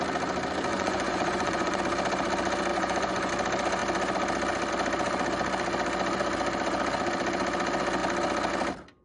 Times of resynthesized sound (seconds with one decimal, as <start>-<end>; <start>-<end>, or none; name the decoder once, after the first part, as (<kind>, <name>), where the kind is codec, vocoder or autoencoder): 0.7-1.8 (vocoder, Vocos); 2.7-3.3